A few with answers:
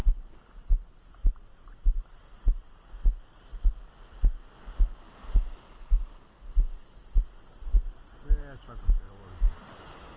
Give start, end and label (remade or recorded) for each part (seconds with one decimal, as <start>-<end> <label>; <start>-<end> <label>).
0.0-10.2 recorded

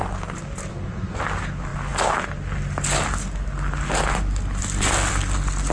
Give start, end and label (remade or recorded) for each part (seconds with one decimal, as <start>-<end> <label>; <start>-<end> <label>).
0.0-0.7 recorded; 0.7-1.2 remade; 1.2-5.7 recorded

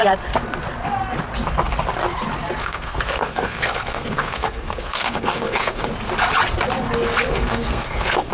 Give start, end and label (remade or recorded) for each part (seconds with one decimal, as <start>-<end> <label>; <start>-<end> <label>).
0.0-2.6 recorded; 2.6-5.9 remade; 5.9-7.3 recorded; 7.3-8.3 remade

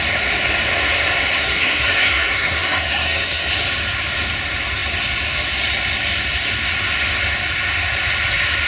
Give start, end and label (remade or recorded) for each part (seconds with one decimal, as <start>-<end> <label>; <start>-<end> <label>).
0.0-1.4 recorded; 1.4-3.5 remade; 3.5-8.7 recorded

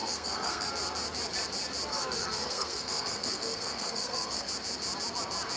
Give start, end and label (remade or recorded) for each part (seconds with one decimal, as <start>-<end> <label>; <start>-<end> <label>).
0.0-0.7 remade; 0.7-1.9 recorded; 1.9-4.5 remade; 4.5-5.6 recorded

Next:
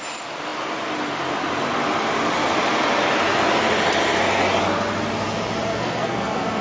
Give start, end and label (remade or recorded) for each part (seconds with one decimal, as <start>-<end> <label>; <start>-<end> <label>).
0.0-5.7 recorded; 5.7-6.6 remade

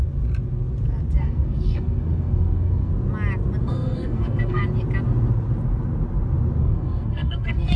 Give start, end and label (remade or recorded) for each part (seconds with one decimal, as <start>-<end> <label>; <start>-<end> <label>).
0.0-1.2 recorded; 1.2-2.9 remade; 2.9-3.6 recorded; 3.6-4.6 remade; 4.6-6.6 recorded; 6.6-7.8 remade

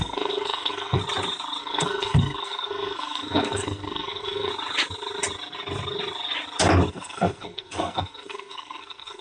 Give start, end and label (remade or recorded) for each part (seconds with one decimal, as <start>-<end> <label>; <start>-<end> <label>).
0.0-1.0 remade; 1.0-1.6 recorded; 1.6-4.5 remade; 4.5-6.9 recorded; 6.9-9.2 remade